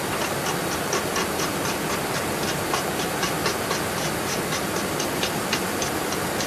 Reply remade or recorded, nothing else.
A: recorded